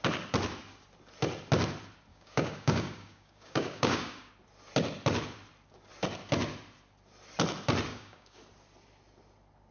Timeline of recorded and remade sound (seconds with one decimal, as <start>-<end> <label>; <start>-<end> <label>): 0.0-2.1 recorded; 2.1-4.3 remade; 4.3-7.9 recorded; 7.9-8.4 remade; 8.4-9.7 recorded